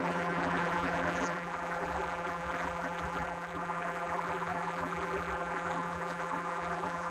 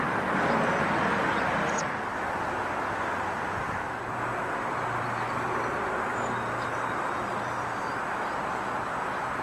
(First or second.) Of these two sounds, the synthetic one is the first